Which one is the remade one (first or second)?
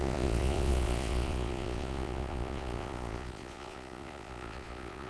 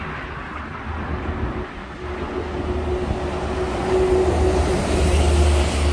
first